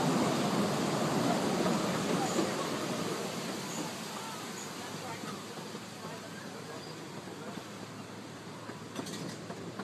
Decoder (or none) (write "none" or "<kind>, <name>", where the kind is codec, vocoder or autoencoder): vocoder, BigVGAN v2